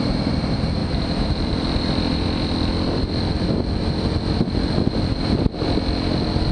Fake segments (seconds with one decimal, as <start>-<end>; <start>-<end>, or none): 0.8-1.5